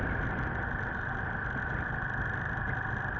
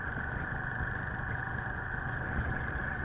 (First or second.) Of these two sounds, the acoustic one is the first